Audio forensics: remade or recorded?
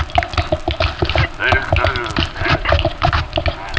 recorded